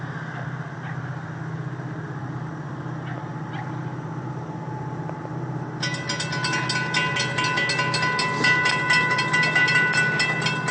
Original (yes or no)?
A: yes